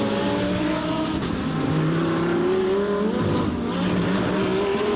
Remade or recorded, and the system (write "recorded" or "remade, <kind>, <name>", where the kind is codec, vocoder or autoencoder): recorded